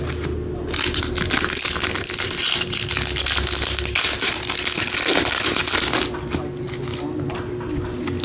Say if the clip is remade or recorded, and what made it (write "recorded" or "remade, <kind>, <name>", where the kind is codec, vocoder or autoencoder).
recorded